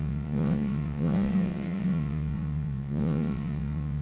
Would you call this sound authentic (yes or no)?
no